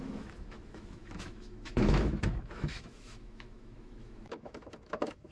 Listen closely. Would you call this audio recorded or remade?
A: remade